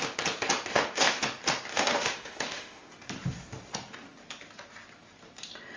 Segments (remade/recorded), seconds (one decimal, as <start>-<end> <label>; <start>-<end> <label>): 0.0-0.7 recorded; 0.7-1.2 remade; 1.2-1.7 recorded; 1.7-2.9 remade; 2.9-5.8 recorded